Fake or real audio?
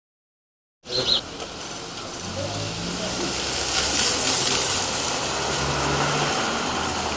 real